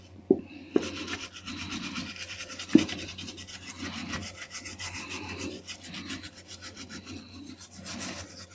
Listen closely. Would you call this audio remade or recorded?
recorded